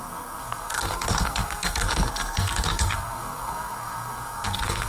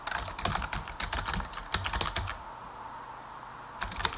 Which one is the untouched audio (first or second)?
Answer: second